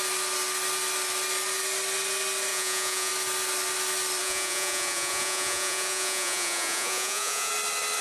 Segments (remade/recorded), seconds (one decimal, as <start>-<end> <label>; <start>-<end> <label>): 0.0-2.5 recorded; 2.5-3.1 remade; 3.1-4.2 recorded; 4.2-7.5 remade; 7.5-8.0 recorded